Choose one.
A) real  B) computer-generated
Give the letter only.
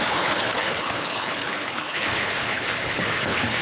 B